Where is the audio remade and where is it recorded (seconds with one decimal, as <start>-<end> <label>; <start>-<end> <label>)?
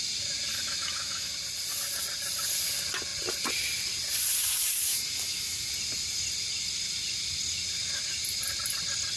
0.0-0.5 recorded; 0.5-1.3 remade; 1.3-4.9 recorded; 4.9-5.7 remade; 5.7-9.2 recorded